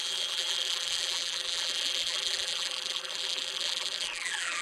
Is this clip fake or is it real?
fake